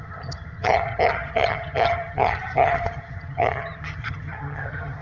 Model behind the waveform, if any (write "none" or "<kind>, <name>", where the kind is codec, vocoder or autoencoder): vocoder, HiFi-GAN